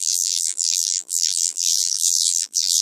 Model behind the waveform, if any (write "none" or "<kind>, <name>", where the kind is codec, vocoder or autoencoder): vocoder, BigVGAN v2